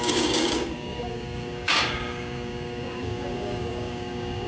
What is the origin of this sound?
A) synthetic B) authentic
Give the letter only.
A